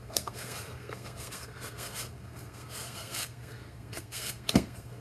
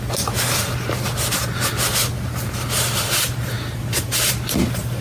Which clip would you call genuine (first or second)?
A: second